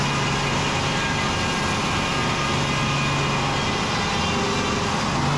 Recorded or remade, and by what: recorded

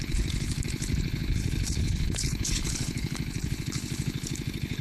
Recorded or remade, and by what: remade, codec, HILCodec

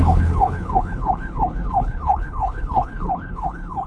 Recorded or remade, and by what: remade, codec, HILCodec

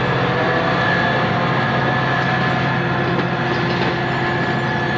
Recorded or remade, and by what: recorded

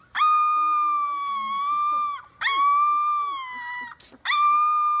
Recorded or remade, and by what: recorded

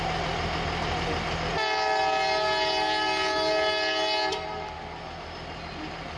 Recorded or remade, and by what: recorded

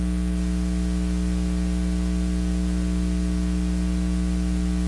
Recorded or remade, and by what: recorded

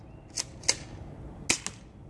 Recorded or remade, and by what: recorded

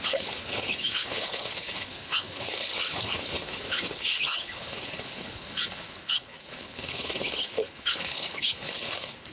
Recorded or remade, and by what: remade, codec, HILCodec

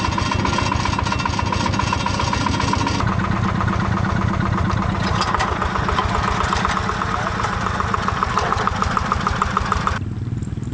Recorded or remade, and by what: recorded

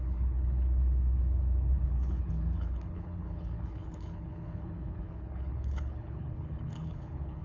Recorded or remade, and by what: remade, codec, HILCodec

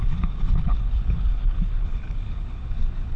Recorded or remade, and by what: remade, codec, HILCodec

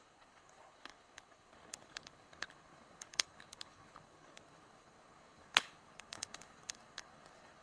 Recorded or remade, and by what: remade, codec, HILCodec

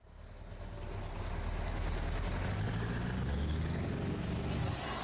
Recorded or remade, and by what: recorded